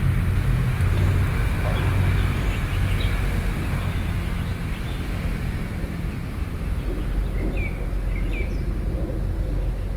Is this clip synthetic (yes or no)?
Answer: no